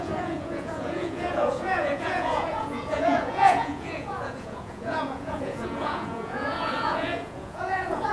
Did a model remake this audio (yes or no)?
yes